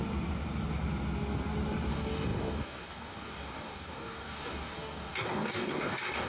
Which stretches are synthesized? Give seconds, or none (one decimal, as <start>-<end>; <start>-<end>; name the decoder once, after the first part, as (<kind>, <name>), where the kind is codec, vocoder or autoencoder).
1.9-6.3 (codec, DAC)